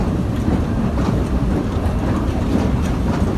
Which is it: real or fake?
fake